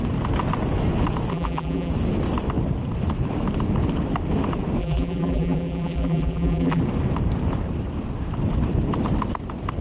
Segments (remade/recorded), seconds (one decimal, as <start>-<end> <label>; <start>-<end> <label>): 0.0-1.3 recorded; 1.3-1.9 remade; 1.9-4.8 recorded; 4.8-6.8 remade; 6.8-9.8 recorded